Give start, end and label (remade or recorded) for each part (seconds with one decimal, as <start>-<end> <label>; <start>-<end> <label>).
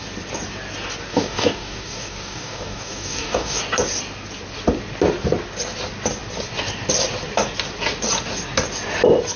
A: 0.0-1.1 recorded; 1.1-3.6 remade; 3.6-9.4 recorded